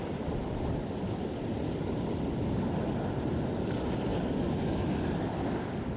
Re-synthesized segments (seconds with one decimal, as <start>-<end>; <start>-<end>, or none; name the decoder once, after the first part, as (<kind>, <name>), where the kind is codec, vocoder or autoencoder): none